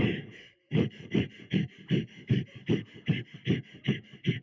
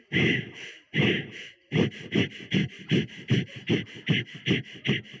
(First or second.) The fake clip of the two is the first